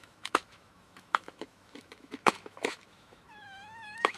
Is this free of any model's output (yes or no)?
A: no